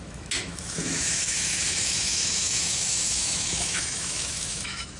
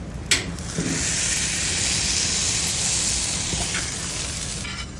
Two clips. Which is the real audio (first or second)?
second